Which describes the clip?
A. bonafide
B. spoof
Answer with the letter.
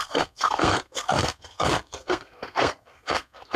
B